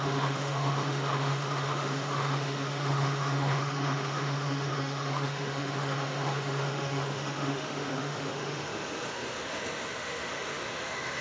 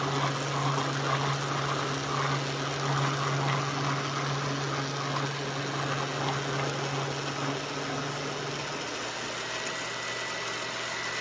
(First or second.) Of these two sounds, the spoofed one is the first